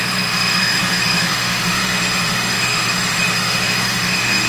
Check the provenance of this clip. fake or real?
fake